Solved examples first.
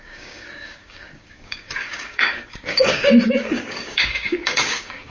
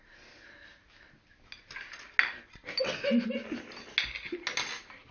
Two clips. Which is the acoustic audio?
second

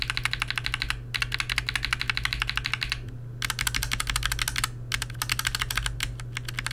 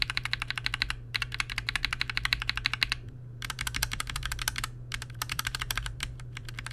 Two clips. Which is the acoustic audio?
first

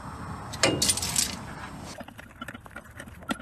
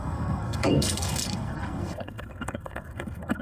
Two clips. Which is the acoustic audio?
first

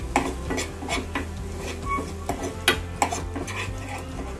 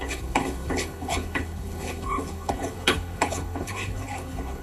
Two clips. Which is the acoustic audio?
first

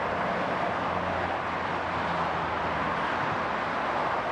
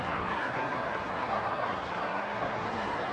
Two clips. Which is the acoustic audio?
first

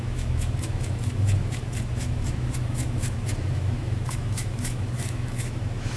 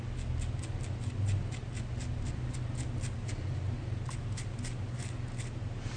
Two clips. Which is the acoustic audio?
second